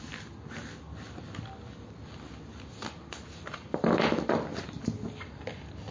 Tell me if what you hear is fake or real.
real